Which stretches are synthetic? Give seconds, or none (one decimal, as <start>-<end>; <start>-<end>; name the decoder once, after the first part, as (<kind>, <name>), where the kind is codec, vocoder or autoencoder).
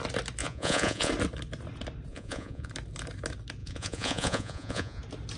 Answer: 0.4-1.1 (vocoder, Vocos); 2.1-2.7; 3.6-5.0